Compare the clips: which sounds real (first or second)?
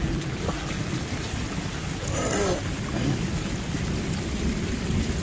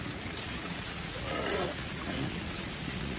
first